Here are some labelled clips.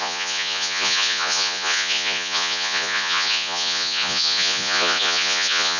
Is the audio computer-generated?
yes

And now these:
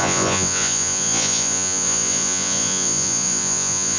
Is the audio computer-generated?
yes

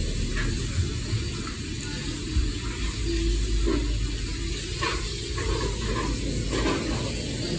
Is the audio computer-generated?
no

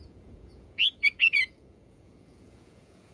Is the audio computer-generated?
yes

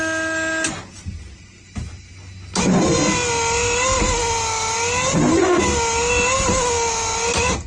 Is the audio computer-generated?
no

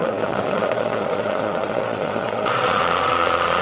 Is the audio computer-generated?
yes